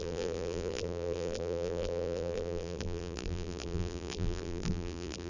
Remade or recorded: remade